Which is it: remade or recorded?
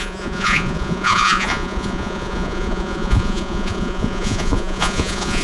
remade